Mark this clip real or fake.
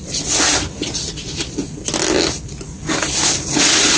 real